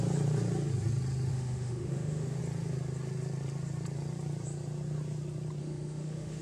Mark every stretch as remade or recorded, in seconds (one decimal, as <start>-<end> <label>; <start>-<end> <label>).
0.0-1.3 recorded; 1.3-2.4 remade; 2.4-5.6 recorded; 5.6-6.4 remade